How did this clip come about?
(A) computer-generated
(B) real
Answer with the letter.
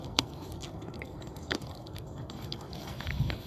A